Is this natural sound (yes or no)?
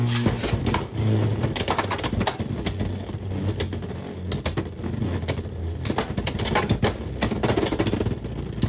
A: yes